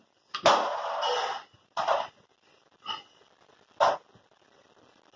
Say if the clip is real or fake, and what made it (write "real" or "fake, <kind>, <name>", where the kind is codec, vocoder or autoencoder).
real